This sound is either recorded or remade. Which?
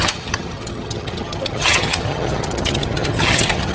remade